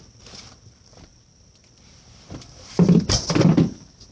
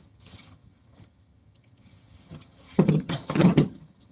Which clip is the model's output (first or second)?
second